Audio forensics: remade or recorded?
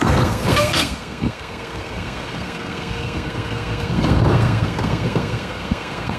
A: remade